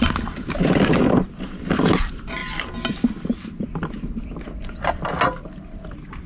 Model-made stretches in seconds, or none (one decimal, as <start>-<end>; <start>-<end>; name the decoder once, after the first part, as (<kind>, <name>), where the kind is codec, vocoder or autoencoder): none